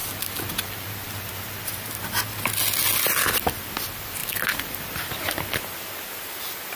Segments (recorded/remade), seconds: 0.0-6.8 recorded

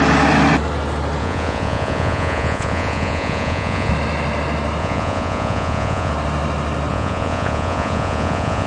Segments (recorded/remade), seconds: 0.0-1.2 recorded; 1.2-3.9 remade; 3.9-4.8 recorded; 4.8-6.1 remade; 6.1-6.9 recorded; 6.9-8.7 remade

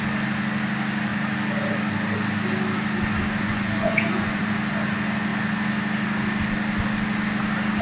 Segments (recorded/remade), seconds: 0.0-3.4 recorded; 3.4-4.4 remade; 4.4-7.8 recorded

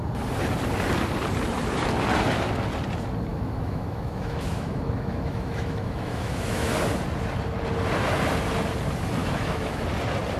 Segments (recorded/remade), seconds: 0.0-3.3 recorded; 3.3-6.7 remade; 6.7-9.2 recorded; 9.2-9.8 remade; 9.8-10.4 recorded